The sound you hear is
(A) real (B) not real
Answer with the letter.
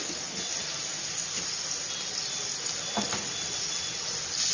A